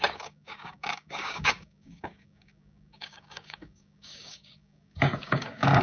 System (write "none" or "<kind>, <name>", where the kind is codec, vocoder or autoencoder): codec, DAC